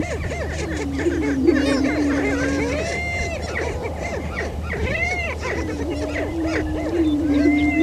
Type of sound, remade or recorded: remade